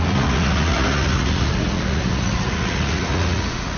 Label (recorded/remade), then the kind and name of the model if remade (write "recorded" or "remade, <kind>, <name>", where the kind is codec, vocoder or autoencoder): remade, vocoder, Vocos